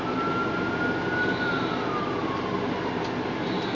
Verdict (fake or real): real